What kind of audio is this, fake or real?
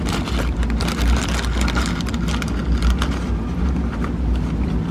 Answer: real